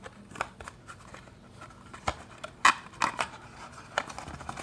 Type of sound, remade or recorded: recorded